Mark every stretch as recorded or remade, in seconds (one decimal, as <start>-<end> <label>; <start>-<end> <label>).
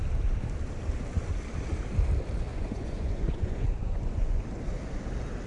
0.0-2.5 recorded; 2.5-4.4 remade; 4.4-5.5 recorded